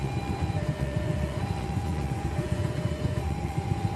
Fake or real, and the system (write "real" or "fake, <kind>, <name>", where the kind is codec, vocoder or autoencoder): fake, vocoder, Vocos